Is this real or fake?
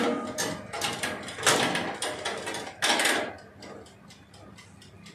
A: real